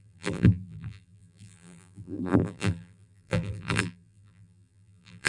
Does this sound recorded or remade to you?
remade